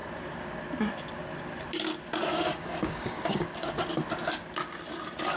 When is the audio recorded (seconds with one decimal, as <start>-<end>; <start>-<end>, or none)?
0.0-2.3; 3.7-5.4